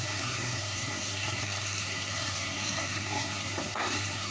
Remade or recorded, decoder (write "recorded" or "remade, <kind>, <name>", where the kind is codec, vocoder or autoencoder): remade, codec, SNAC